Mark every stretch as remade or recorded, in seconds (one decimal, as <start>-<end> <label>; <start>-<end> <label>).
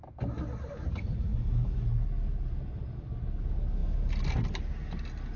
0.0-5.4 recorded